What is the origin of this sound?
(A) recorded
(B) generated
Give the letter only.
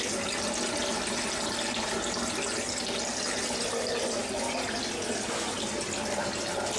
A